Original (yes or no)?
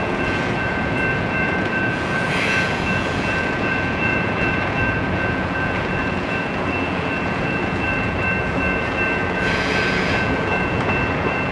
no